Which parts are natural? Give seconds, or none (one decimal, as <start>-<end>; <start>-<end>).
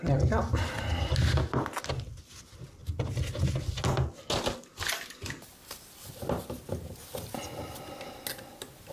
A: 0.0-8.9